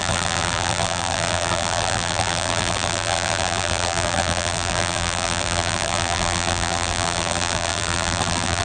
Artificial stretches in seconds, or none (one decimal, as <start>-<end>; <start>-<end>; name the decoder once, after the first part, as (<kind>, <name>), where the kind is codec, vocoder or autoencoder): 0.0-8.6 (vocoder, BigVGAN v2)